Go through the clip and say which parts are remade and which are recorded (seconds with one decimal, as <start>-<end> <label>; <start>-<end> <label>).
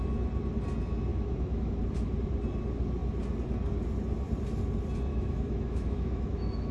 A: 0.0-1.1 recorded; 1.1-1.8 remade; 1.8-5.1 recorded; 5.1-6.7 remade